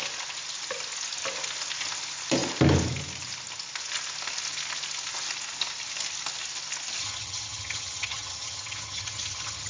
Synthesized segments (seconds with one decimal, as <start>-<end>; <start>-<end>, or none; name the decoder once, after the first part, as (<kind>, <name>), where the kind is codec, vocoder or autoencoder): 7.0-9.7 (vocoder, HiFi-GAN)

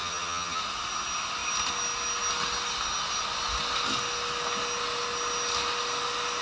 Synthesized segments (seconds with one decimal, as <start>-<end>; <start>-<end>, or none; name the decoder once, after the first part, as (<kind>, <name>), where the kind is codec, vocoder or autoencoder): 0.0-0.6 (vocoder, HiFi-GAN)